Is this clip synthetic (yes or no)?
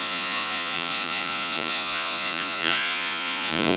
yes